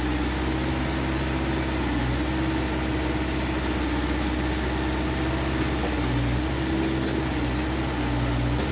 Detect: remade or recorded recorded